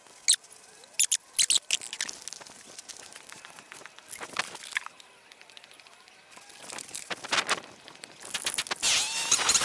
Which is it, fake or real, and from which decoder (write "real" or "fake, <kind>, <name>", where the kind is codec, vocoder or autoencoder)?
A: real